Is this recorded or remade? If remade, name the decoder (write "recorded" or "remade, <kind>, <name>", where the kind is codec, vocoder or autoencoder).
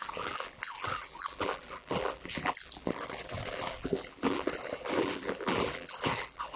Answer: remade, vocoder, BigVGAN v2